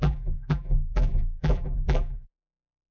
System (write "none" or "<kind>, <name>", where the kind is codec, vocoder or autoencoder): vocoder, BigVGAN v2